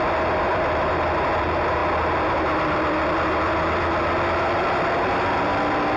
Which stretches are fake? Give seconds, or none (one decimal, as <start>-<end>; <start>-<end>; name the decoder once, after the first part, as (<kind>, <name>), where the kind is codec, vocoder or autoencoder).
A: 0.0-6.0 (vocoder, BigVGAN v2)

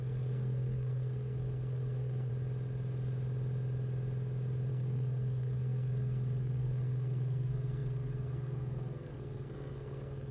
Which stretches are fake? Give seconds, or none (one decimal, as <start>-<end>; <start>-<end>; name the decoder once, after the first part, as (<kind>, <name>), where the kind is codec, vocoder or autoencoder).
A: 0.0-2.3 (codec, SNAC); 4.7-10.3